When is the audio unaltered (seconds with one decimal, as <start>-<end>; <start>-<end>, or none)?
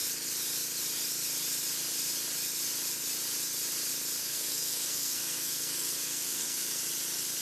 0.0-4.2; 6.8-7.4